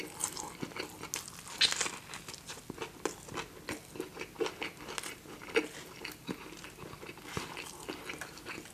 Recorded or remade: recorded